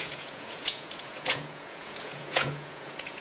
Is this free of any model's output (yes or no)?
no